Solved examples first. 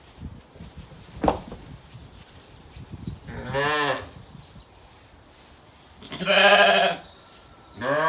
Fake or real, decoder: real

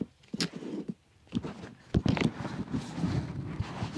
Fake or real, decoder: real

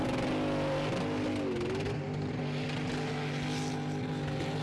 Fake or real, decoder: real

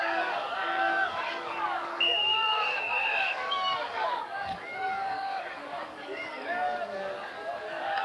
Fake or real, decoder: fake, codec, DAC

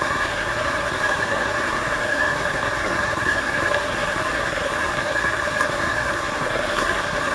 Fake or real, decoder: fake, codec, SNAC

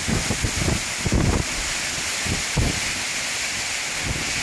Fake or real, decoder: real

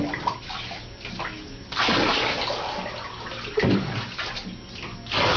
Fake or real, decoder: real